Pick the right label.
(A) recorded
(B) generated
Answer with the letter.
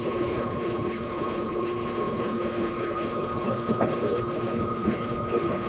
B